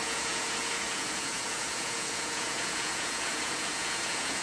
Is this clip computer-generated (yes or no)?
yes